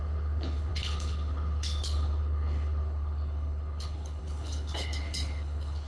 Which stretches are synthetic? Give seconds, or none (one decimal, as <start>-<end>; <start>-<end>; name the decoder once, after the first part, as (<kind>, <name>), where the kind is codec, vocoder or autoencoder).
0.0-5.9 (codec, HILCodec)